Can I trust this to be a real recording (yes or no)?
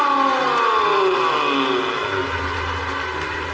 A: yes